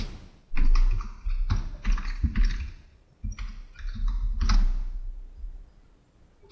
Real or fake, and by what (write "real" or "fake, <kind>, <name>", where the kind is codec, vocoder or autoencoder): real